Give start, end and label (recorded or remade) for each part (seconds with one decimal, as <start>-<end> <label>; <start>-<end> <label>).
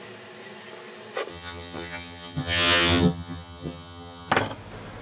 0.0-1.3 recorded; 1.3-4.3 remade; 4.3-5.0 recorded